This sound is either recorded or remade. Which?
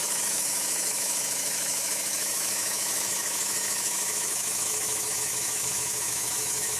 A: remade